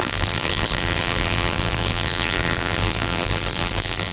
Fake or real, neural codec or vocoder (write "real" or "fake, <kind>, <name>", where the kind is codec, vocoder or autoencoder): fake, vocoder, BigVGAN v2